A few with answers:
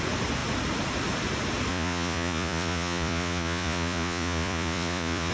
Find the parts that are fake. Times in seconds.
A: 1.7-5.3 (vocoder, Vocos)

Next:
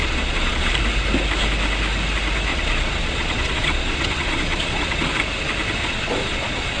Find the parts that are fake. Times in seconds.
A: 0.0-0.7 (vocoder, Vocos); 2.5-5.1; 5.8-6.8